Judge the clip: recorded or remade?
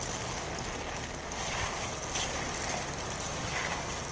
recorded